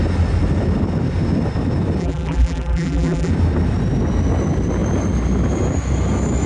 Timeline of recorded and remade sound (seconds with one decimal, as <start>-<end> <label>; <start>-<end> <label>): 0.0-2.0 recorded; 2.0-3.3 remade; 3.3-6.5 recorded